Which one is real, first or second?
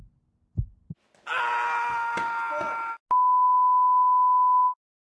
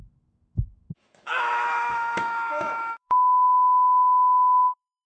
first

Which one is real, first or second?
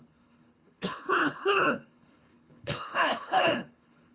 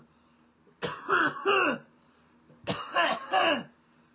second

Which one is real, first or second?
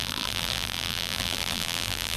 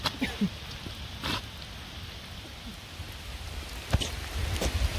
second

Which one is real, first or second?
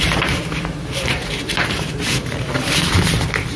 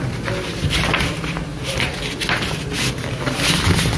second